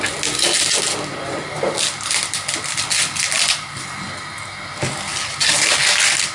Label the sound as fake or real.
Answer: real